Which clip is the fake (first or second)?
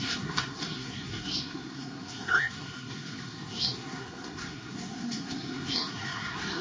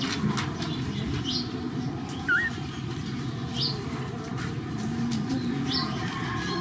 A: first